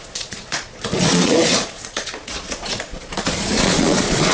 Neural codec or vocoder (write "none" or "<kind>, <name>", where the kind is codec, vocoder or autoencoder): vocoder, Vocos